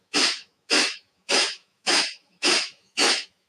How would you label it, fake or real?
fake